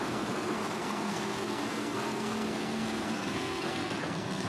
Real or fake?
fake